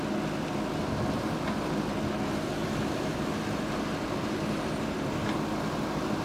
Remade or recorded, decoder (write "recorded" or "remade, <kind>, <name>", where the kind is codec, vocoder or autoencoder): recorded